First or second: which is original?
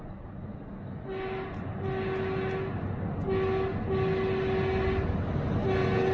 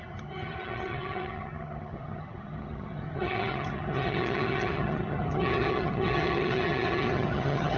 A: first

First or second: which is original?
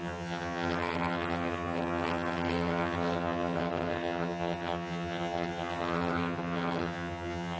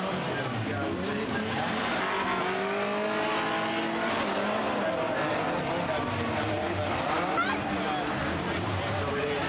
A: second